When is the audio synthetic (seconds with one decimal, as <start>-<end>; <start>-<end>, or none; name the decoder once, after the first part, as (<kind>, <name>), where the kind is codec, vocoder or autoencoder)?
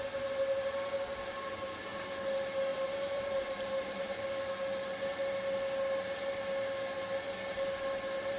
2.7-3.9 (vocoder, BigVGAN v2)